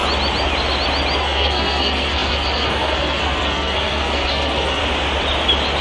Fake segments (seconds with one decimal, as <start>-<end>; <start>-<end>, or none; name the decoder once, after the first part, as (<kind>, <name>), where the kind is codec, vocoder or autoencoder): 1.2-4.8 (codec, SNAC)